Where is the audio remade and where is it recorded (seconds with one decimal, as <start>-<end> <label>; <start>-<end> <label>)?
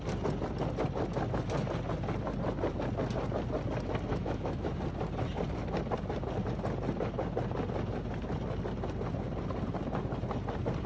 0.0-4.1 recorded; 4.1-4.7 remade; 4.7-10.9 recorded